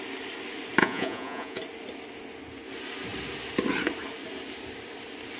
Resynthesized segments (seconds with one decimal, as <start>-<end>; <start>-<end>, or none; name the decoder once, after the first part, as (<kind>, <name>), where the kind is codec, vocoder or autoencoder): 0.8-1.6 (vocoder, Vocos)